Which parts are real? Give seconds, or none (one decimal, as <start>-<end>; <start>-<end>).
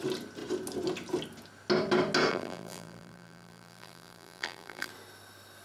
0.0-2.3; 4.9-5.6